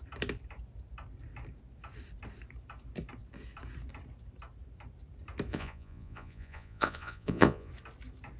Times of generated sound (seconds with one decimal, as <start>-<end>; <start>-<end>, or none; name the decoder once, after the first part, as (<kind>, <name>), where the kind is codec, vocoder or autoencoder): 5.5-7.7 (vocoder, Vocos)